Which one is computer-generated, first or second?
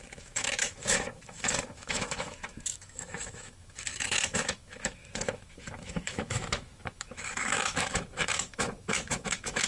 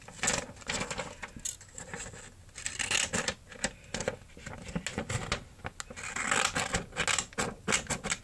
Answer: first